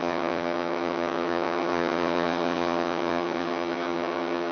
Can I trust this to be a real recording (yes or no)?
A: no